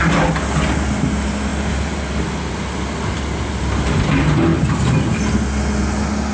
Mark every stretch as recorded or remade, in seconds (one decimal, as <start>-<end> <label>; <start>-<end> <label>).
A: 0.0-4.5 recorded; 4.5-5.2 remade; 5.2-6.3 recorded